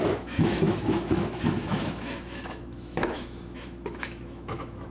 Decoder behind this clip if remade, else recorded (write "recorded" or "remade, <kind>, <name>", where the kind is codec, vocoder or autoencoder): remade, autoencoder, DAC-VAE